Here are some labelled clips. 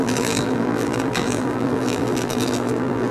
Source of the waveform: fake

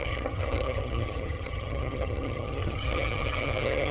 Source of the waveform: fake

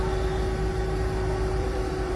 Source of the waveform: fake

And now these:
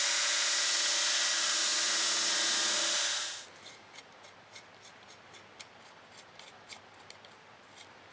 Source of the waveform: real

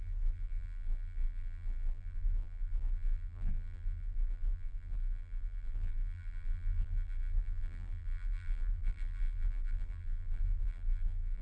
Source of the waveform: fake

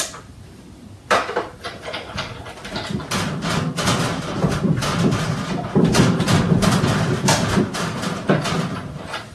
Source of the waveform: real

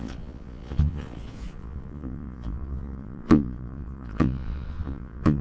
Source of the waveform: fake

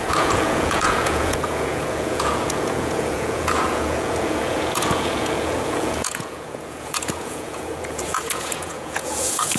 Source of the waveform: fake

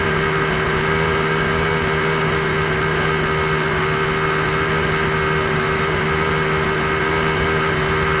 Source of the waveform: real